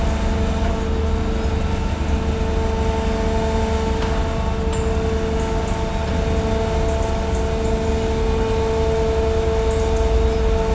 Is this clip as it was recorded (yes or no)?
yes